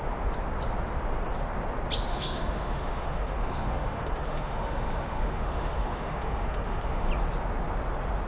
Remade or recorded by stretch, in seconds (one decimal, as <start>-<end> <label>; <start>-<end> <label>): 0.0-2.1 recorded; 2.1-7.1 remade; 7.1-8.3 recorded